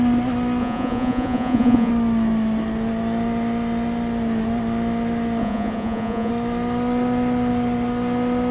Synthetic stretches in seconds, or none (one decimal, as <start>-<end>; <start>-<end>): 0.6-1.9; 5.4-6.3